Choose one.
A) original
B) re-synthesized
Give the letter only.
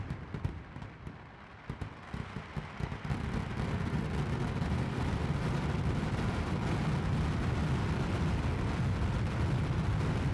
B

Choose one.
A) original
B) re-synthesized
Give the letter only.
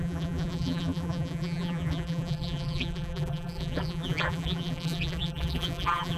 B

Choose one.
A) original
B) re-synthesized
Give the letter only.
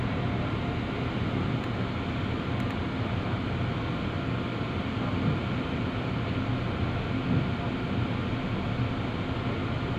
A